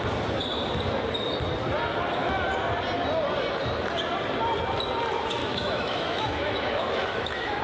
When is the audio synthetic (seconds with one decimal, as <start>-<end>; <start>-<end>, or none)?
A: 5.4-7.6